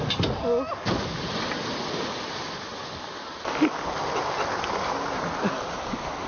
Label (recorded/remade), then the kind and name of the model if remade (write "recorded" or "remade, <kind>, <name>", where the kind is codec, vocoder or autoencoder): recorded